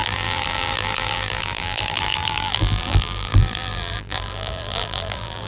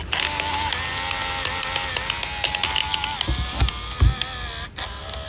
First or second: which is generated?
first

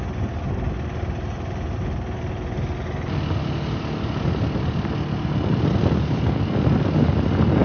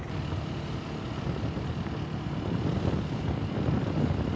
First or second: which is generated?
second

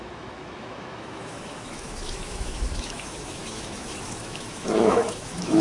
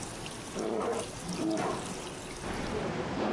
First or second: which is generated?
first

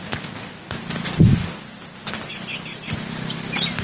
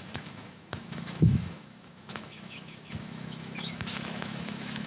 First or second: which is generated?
second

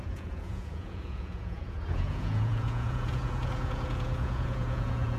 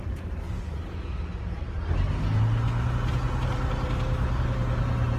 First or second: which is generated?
first